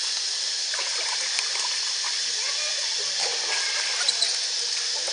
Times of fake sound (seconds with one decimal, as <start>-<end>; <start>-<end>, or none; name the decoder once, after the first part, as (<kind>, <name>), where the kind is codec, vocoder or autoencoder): none